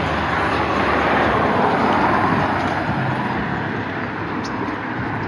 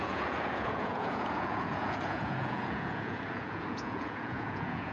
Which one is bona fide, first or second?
first